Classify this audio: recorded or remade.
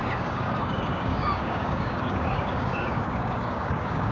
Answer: remade